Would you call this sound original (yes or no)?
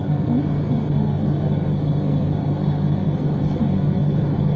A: no